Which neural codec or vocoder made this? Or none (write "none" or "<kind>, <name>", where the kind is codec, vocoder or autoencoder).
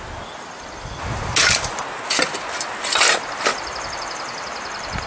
none